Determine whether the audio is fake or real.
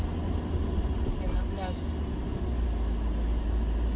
real